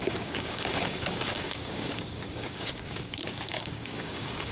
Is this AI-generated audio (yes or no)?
yes